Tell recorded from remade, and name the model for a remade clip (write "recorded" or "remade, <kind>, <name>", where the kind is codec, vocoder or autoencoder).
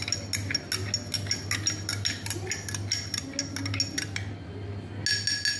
recorded